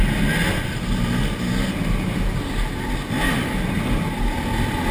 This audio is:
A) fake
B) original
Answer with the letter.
B